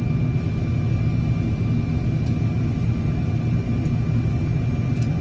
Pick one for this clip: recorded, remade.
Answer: recorded